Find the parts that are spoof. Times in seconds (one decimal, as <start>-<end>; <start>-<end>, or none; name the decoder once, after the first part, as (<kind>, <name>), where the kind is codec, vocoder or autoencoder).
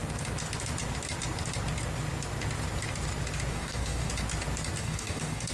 3.5-4.1 (codec, DAC); 4.8-5.5